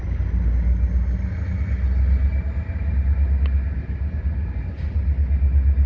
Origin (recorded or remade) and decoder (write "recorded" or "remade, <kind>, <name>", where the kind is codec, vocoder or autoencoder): recorded